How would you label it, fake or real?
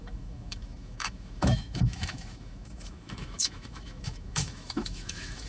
fake